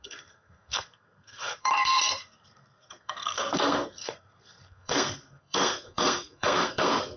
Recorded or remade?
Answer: remade